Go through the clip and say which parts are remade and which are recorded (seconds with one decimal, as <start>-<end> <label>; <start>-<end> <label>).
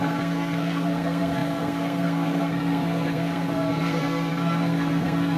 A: 0.0-5.4 remade